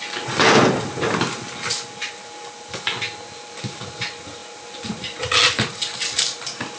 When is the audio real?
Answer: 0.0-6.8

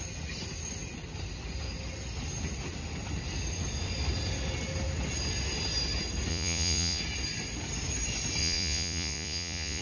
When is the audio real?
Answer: 0.0-6.3; 7.0-8.4

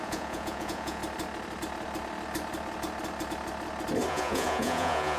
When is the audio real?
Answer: 1.0-4.1

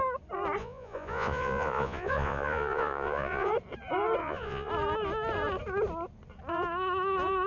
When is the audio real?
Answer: 0.0-0.6; 3.5-4.2; 4.7-7.5

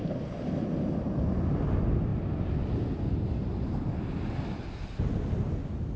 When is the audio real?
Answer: 0.0-6.0

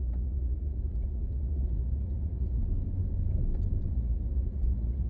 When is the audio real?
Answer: 2.6-3.9